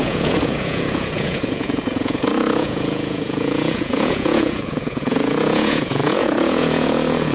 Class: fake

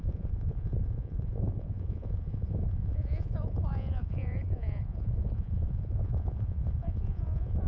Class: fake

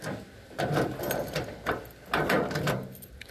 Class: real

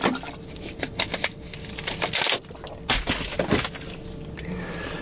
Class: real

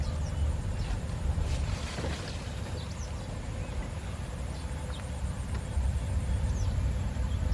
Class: real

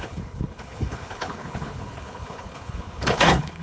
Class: fake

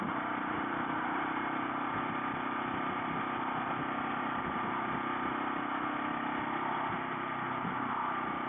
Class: real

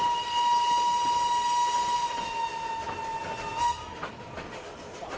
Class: real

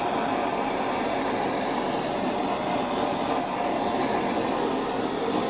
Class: real